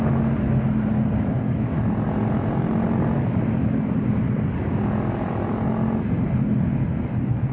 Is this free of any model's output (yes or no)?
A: yes